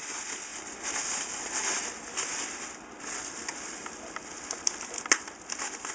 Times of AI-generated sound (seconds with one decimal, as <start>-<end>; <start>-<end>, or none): none

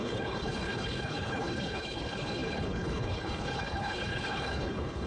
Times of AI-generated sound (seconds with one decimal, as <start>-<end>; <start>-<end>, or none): 0.0-5.1

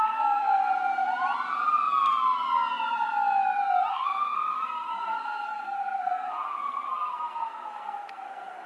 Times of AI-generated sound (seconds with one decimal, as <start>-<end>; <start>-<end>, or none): 0.0-0.6; 3.9-8.7

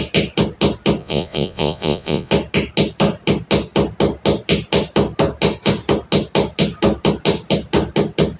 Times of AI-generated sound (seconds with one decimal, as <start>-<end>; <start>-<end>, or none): 1.0-2.3

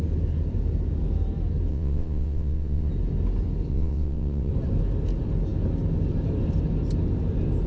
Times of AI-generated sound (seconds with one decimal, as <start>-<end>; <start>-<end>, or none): 1.7-2.9; 3.7-4.5

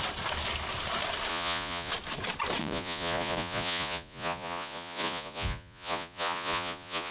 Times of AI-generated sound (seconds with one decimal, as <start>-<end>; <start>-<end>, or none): 1.3-1.9; 2.6-7.1

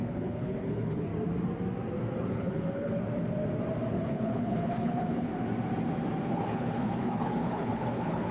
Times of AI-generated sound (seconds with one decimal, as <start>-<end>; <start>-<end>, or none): 0.0-1.1; 2.3-3.0; 3.9-5.3; 6.2-8.3